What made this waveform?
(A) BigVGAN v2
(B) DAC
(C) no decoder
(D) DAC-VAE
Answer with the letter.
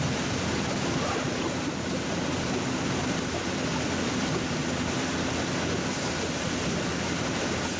A